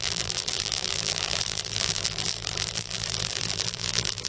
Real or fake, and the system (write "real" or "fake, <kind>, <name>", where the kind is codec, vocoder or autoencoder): fake, vocoder, BigVGAN v2